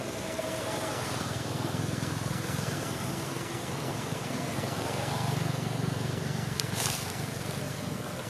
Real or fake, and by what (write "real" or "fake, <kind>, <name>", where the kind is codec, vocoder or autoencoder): fake, codec, SNAC